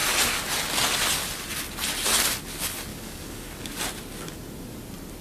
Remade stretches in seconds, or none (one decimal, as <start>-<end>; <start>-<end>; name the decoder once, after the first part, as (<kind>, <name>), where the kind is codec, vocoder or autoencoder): 2.9-3.8 (codec, DAC)